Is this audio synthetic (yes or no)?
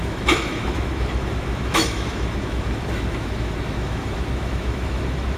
yes